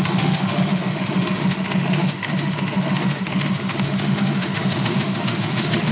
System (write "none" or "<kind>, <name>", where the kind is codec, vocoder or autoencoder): autoencoder, DAC-VAE